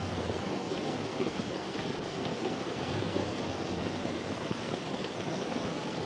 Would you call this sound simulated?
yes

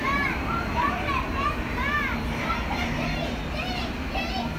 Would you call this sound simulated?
no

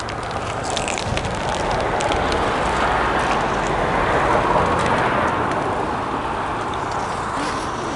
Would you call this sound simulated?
no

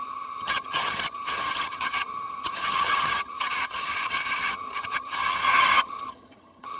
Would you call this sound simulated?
yes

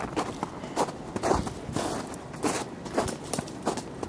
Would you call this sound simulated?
no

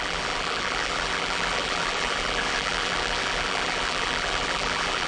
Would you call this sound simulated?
yes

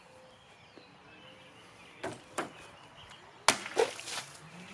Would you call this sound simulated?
no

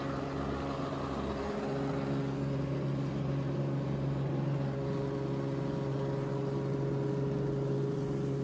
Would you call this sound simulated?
no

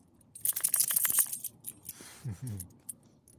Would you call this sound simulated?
no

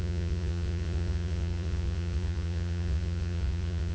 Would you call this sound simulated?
yes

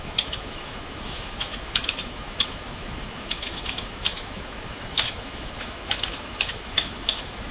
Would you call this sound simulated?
yes